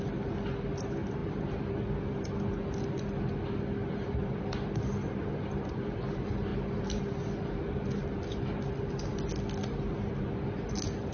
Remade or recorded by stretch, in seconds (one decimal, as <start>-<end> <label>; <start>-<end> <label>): 0.0-6.5 recorded; 6.5-7.0 remade; 7.0-11.1 recorded